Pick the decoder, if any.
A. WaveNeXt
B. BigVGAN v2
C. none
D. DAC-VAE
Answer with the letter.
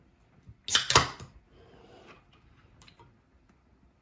C